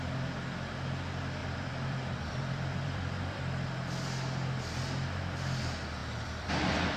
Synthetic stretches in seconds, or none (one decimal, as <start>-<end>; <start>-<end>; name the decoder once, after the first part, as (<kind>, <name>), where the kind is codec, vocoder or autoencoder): 1.4-3.4 (vocoder, BigVGAN v2); 6.0-7.0